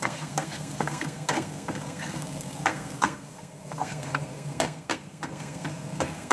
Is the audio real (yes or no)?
no